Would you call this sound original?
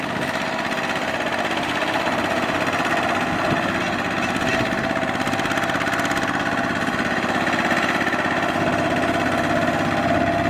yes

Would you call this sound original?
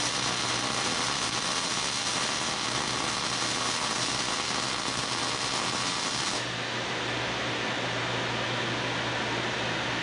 yes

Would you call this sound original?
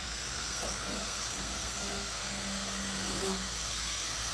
no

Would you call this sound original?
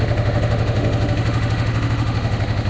no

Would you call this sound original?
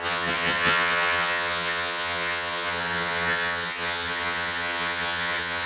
no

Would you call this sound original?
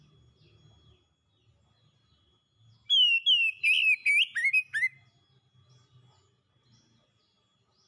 yes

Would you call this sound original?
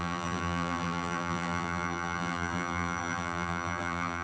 no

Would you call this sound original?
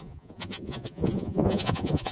no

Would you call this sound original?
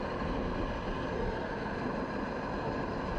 yes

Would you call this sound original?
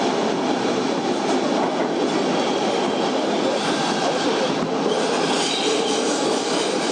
yes